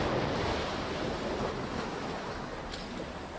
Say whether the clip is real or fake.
real